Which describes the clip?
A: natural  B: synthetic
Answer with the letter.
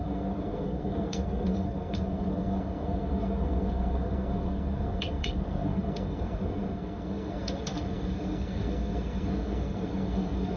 B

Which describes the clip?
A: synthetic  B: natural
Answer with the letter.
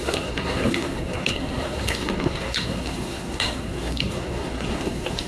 A